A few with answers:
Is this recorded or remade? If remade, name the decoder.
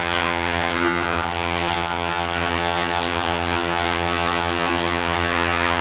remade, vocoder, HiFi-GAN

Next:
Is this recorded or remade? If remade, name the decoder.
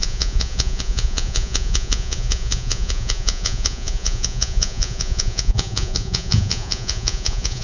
remade, vocoder, Vocos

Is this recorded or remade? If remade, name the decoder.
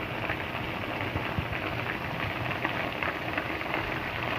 recorded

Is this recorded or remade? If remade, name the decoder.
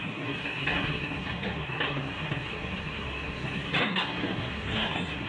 remade, codec, SNAC